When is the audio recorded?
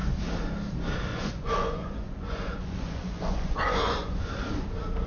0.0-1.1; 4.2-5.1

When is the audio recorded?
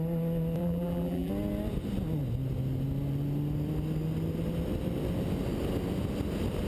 0.0-0.6; 1.3-6.7